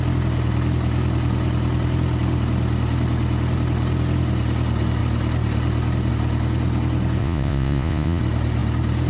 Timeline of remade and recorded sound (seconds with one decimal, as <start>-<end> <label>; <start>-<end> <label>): 0.0-7.2 recorded; 7.2-8.2 remade; 8.2-9.1 recorded